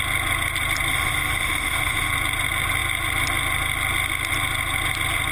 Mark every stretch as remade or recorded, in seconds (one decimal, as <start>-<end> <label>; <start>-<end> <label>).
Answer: 0.0-0.9 recorded; 0.9-2.1 remade; 2.1-5.3 recorded